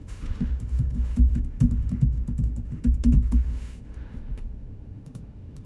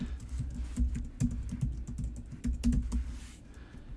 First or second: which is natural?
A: second